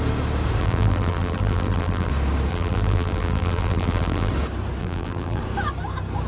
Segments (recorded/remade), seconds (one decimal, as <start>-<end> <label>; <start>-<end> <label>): 0.0-0.6 recorded; 0.6-2.1 remade; 2.1-2.5 recorded; 2.5-4.3 remade; 4.3-4.8 recorded; 4.8-5.4 remade; 5.4-6.3 recorded